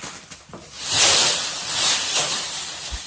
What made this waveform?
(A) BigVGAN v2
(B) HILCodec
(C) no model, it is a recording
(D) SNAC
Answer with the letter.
C